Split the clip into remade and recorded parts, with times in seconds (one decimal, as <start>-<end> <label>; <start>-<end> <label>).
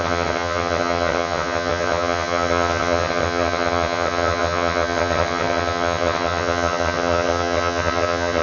0.0-8.4 remade